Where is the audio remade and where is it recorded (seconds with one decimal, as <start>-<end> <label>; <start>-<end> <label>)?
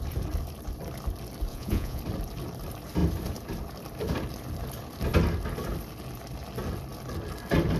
0.0-1.5 recorded; 1.5-2.0 remade; 2.0-7.8 recorded